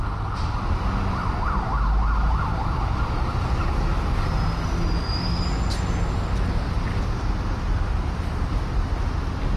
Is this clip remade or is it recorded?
recorded